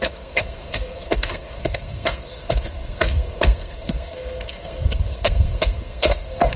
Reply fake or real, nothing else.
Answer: fake